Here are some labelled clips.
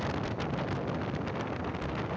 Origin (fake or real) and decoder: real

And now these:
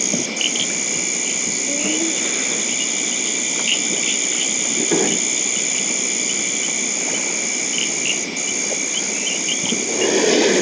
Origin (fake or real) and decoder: real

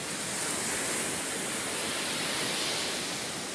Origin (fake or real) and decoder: real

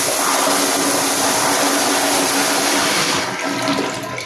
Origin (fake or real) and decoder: real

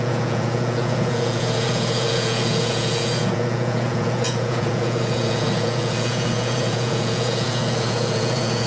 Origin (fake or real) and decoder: fake, vocoder, Vocos